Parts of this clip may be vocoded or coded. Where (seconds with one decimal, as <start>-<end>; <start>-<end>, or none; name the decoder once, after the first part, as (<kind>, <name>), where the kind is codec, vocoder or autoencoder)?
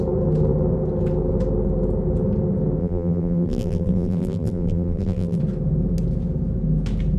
2.8-5.4 (vocoder, BigVGAN v2)